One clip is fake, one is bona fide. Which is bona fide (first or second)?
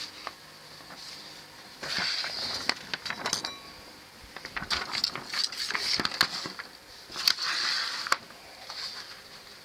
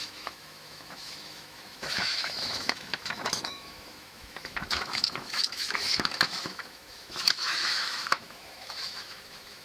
first